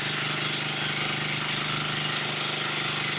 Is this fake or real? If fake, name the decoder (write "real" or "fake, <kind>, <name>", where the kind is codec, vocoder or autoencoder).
real